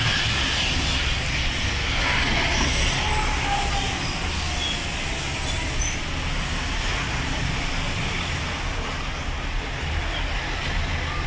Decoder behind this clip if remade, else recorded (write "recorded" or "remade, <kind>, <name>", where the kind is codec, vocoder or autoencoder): recorded